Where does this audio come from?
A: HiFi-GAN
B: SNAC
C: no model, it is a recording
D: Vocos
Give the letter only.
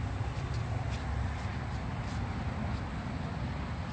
C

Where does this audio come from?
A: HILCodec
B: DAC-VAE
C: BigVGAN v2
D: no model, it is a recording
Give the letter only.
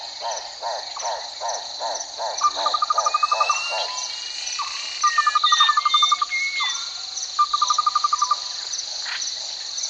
D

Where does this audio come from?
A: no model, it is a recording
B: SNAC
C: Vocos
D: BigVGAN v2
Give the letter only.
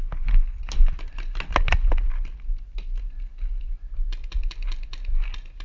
A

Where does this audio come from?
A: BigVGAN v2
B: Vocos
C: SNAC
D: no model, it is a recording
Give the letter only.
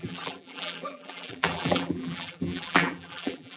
A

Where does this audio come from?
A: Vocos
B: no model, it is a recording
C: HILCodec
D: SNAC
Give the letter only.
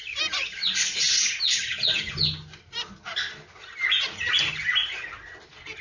B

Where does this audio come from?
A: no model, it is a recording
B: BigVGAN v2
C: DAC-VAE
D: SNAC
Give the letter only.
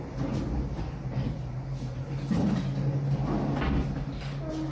A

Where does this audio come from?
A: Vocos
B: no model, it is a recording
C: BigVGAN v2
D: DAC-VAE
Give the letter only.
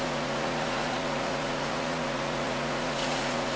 A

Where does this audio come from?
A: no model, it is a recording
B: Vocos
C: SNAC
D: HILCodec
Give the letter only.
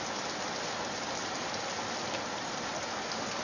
A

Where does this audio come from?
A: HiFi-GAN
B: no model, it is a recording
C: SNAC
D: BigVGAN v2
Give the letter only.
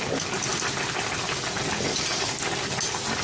B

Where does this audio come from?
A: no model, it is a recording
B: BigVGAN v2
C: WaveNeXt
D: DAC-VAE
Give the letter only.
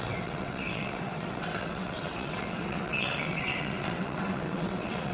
C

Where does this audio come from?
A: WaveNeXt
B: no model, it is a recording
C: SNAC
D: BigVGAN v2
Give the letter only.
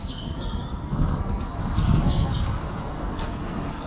C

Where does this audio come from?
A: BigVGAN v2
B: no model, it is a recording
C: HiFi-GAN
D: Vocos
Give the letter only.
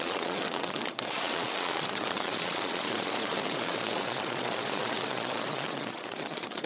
D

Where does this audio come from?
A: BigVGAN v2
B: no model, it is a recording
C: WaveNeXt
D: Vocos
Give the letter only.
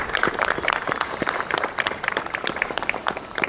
A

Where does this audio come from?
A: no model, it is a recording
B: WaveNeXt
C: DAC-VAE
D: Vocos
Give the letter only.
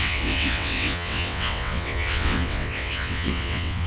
B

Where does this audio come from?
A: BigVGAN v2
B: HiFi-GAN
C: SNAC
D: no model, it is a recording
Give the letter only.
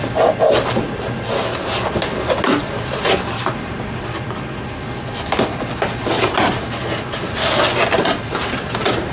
D